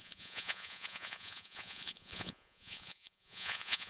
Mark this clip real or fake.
fake